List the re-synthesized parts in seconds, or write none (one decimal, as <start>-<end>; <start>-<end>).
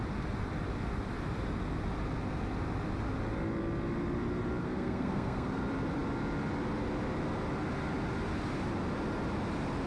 4.6-5.6